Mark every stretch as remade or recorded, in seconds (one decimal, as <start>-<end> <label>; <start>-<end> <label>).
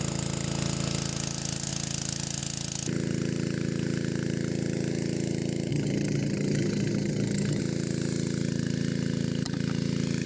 0.0-5.7 recorded; 5.7-7.6 remade; 7.6-10.3 recorded